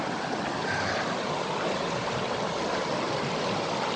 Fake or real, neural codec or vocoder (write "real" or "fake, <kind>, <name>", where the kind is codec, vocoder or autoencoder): real